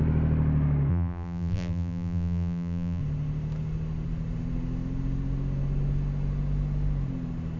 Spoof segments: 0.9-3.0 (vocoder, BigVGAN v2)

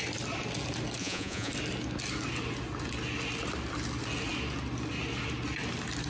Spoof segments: 1.0-1.5 (vocoder, Vocos)

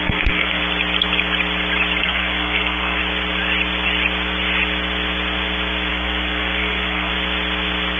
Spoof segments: 0.0-0.6 (codec, SNAC); 2.0-3.0; 5.9-7.1

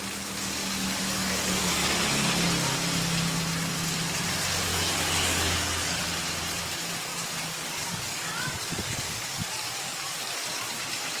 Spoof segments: 0.6-1.7 (codec, DAC); 4.7-6.0; 7.1-10.7

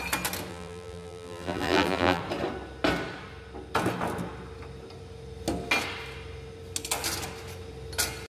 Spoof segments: 0.5-2.2 (vocoder, BigVGAN v2)